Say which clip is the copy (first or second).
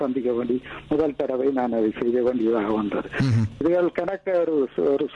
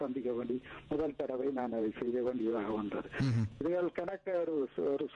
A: second